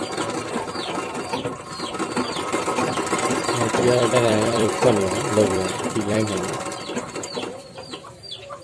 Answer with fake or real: fake